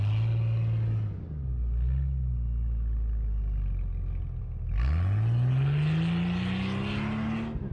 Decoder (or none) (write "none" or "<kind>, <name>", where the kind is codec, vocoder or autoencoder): none